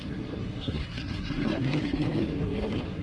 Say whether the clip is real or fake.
fake